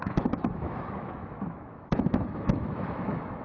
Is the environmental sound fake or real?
fake